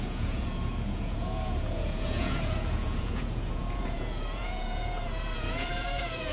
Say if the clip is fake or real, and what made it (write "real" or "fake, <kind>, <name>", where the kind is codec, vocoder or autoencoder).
fake, vocoder, Vocos